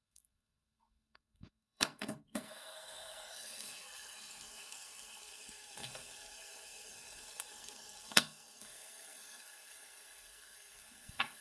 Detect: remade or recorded remade